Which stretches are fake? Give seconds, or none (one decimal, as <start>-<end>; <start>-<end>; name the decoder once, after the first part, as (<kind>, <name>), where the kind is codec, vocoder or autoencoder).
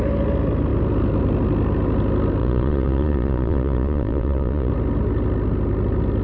2.4-4.7 (vocoder, Vocos)